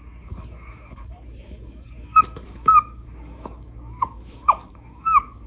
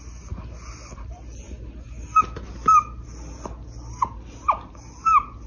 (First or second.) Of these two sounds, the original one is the second